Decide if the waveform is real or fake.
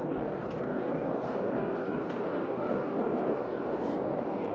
fake